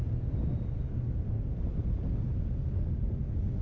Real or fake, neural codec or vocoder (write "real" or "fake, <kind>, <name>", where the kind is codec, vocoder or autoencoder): real